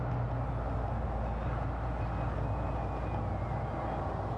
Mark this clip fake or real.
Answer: real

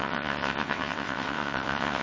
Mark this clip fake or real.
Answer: fake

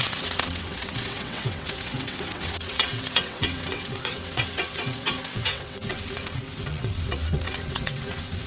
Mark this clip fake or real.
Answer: fake